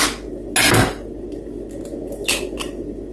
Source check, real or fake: real